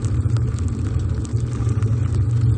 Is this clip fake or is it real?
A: real